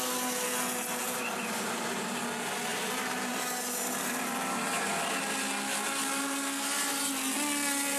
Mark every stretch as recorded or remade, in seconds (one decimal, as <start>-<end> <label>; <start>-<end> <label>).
0.0-1.0 recorded; 1.0-2.2 remade; 2.2-2.7 recorded; 2.7-4.9 remade; 4.9-8.0 recorded